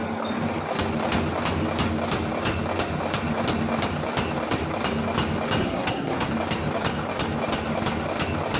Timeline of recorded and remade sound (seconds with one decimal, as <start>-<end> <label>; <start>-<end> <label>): 0.0-5.6 recorded; 5.6-6.3 remade; 6.3-8.6 recorded